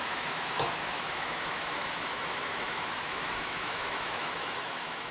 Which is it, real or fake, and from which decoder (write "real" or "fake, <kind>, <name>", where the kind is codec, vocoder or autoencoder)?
fake, autoencoder, DAC-VAE